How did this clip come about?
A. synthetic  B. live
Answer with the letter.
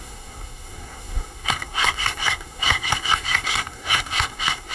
A